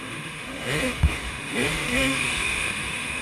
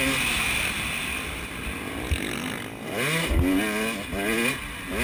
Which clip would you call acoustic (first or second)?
second